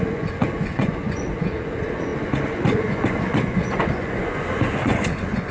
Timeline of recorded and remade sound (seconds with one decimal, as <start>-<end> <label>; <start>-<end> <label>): 0.0-5.5 remade